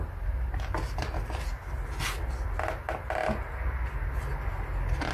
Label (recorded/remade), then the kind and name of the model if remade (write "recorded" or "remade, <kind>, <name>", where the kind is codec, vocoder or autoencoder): recorded